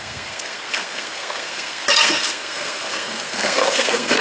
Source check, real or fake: fake